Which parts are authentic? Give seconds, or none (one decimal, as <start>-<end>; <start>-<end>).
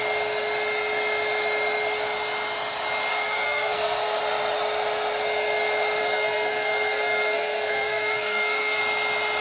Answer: 0.0-3.1; 4.2-6.0; 8.8-9.4